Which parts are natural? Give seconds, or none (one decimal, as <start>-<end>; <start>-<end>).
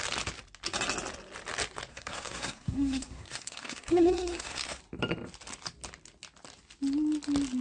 0.0-1.9; 4.8-7.6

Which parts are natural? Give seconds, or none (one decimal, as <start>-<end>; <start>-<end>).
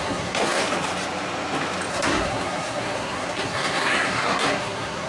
0.6-1.9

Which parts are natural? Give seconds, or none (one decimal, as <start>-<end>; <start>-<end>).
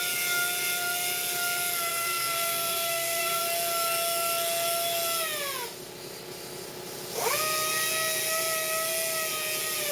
0.0-1.9; 3.4-9.9